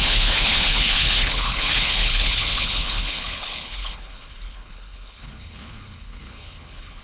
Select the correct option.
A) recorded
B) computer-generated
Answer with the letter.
B